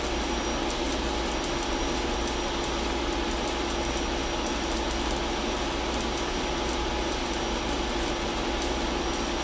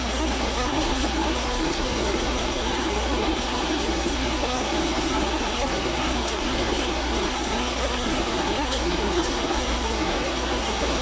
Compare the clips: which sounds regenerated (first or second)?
second